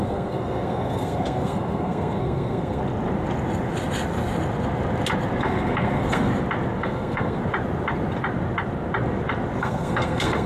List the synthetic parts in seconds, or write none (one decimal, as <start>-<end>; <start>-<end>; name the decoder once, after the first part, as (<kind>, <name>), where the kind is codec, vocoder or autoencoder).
0.0-2.8 (codec, SNAC); 5.4-6.3; 6.8-7.4; 9.6-10.5